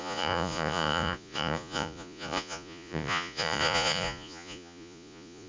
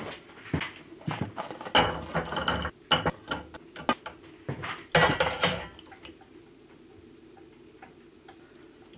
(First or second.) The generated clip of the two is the first